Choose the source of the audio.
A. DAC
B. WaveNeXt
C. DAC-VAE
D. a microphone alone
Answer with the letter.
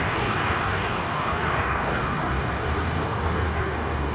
A